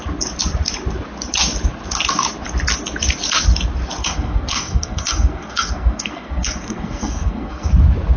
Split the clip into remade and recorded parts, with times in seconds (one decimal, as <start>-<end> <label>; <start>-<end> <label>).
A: 0.0-4.0 recorded; 4.0-7.7 remade; 7.7-8.2 recorded